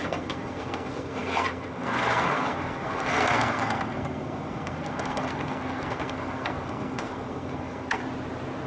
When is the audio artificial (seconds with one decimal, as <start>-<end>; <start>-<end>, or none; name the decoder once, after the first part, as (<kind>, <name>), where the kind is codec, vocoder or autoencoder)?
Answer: 0.0-8.0 (codec, SNAC)